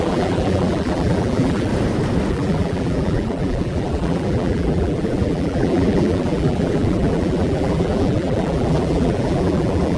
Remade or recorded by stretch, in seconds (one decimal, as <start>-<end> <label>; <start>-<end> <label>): 0.0-1.7 remade; 1.7-2.3 recorded; 2.3-10.0 remade